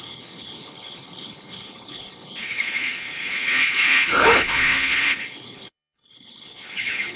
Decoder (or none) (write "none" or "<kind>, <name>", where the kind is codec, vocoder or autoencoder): codec, HILCodec